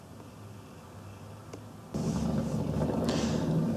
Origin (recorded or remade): recorded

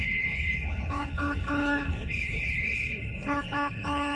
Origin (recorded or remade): remade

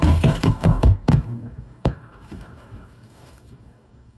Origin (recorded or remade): remade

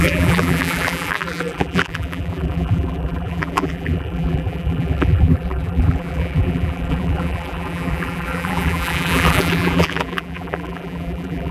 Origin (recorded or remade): remade